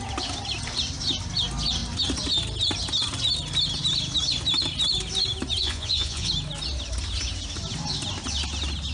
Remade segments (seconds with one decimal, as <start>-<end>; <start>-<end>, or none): 5.6-6.3

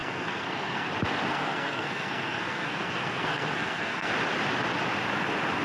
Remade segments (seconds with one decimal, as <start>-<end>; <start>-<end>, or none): 0.0-0.9; 1.3-4.1

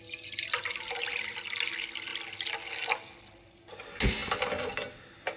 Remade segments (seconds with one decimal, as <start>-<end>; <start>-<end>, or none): none

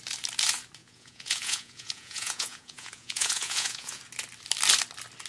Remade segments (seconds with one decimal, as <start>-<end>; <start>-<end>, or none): 0.8-4.0

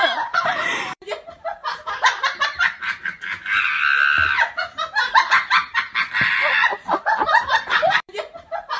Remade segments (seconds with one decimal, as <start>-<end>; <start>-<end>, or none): 0.0-1.6; 6.0-8.8

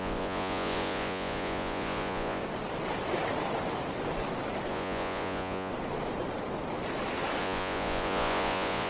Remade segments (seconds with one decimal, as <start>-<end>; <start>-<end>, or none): 0.0-2.4; 4.7-5.7; 7.4-8.9

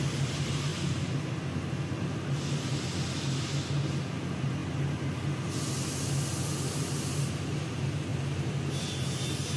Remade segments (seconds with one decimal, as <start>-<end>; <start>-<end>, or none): none